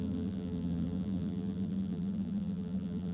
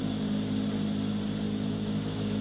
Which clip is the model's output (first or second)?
first